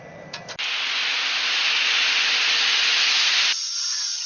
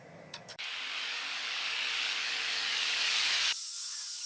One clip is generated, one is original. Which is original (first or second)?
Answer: first